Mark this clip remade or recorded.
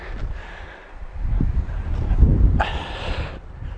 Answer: recorded